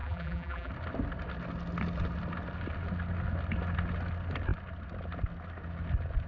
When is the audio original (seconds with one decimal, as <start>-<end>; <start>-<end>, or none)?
0.7-6.3